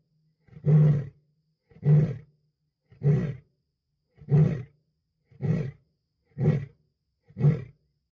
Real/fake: real